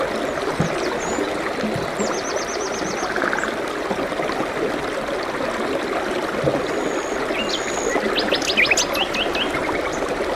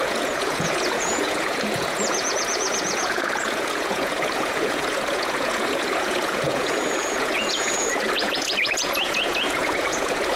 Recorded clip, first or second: first